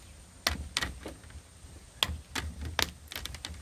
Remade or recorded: recorded